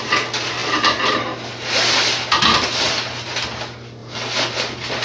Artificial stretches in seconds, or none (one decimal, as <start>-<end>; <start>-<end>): none